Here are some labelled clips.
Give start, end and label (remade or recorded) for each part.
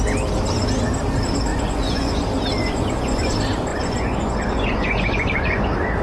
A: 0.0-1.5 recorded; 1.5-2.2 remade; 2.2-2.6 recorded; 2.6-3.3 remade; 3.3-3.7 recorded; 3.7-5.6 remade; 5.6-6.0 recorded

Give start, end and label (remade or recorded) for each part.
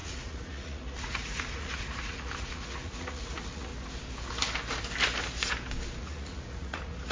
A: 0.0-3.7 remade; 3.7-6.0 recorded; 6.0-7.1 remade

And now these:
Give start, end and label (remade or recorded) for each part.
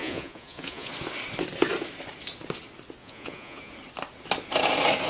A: 0.0-0.9 remade; 0.9-3.0 recorded; 3.0-3.7 remade; 3.7-5.1 recorded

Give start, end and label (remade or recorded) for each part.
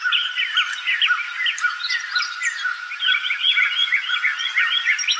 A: 0.0-3.8 recorded; 3.8-4.7 remade; 4.7-5.2 recorded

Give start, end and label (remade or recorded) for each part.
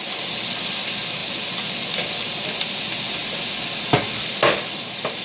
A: 0.0-5.2 recorded